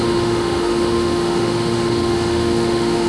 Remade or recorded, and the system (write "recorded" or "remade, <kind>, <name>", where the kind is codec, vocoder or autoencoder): remade, autoencoder, DAC-VAE